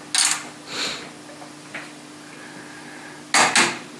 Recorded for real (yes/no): yes